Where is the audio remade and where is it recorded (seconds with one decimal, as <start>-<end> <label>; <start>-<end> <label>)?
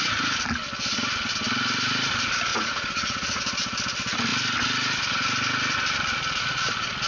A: 0.0-2.5 recorded; 2.5-3.4 remade; 3.4-7.1 recorded